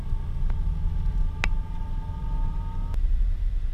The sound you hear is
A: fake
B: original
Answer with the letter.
B